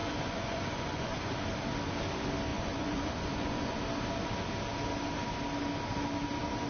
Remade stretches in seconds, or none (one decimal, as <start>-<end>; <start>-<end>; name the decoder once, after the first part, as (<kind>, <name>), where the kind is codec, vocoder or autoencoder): 0.0-1.3 (vocoder, Vocos); 2.5-3.8